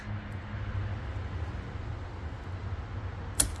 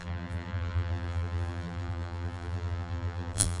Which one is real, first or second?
first